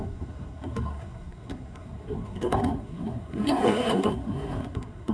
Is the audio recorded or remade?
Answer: remade